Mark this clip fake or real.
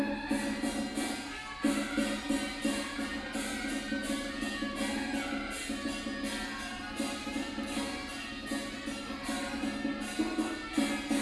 real